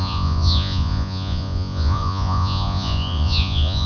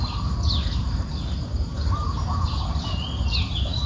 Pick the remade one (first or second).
first